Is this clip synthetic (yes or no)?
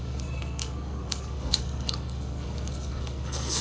yes